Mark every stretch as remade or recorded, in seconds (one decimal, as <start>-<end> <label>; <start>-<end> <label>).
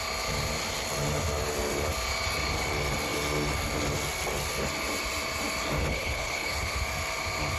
0.0-5.8 recorded; 5.8-6.8 remade; 6.8-7.6 recorded